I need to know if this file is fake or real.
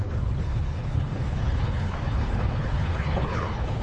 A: fake